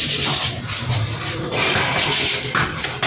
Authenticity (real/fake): real